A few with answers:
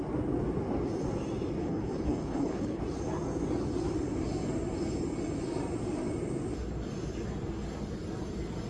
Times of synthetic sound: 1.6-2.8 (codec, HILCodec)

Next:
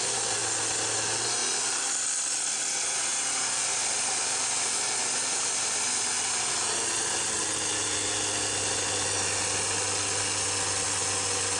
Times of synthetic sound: none